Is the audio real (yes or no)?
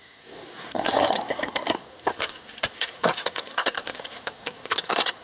no